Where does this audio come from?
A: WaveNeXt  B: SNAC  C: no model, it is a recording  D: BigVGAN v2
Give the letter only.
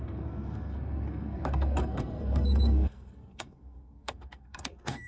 B